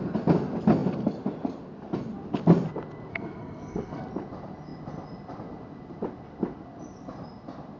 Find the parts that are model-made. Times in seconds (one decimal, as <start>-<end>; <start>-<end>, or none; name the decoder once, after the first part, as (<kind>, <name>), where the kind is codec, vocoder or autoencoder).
3.1-4.0 (codec, SNAC)